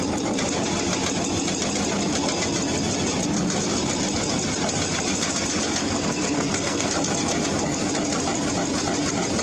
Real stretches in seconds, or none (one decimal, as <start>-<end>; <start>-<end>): 0.0-5.8; 6.9-9.4